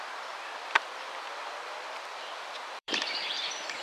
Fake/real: fake